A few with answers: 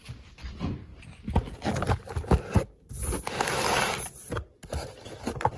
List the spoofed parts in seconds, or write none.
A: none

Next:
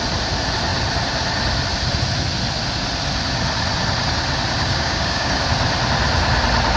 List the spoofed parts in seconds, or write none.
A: 4.6-5.4 (codec, DAC)

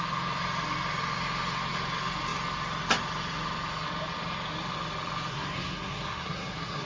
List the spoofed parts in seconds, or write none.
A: 5.3-6.9 (codec, SNAC)

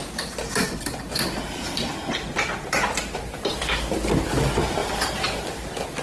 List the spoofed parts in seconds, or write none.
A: none

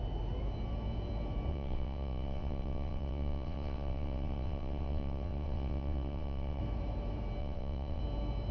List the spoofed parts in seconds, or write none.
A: 1.5-6.6 (vocoder, WaveNeXt); 7.4-8.0

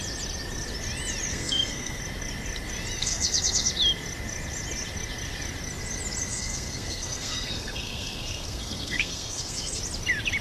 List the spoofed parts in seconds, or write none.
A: 1.3-2.0 (codec, SNAC); 3.0-3.7; 6.3-9.8